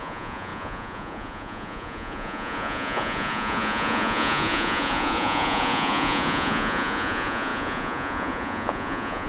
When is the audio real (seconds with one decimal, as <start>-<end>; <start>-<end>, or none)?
none